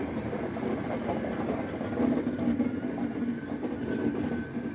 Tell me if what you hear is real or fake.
real